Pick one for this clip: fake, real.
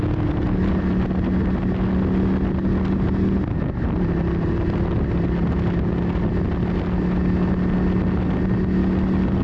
real